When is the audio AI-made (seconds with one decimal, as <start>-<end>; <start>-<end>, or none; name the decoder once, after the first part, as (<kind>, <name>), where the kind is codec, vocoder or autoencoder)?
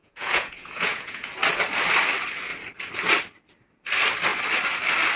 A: 0.0-1.3 (vocoder, Vocos)